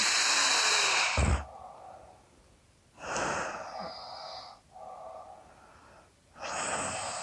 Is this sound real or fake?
real